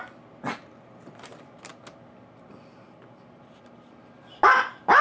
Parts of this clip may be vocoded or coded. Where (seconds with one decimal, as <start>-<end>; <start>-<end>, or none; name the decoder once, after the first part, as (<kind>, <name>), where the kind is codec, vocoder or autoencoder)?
none